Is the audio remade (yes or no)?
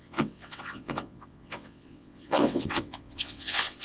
yes